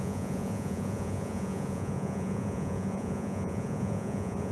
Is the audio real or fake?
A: fake